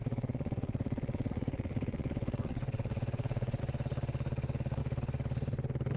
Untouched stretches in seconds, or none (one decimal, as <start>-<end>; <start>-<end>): 3.6-6.0